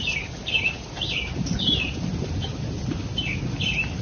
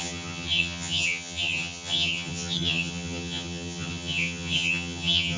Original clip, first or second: first